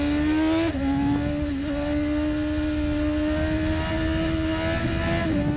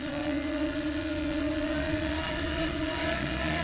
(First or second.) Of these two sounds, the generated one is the second